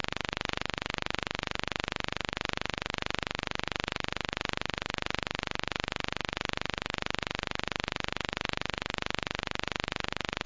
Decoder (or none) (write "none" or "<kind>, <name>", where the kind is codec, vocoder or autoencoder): none